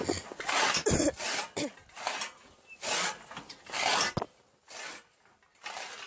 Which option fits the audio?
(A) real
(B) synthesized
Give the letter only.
A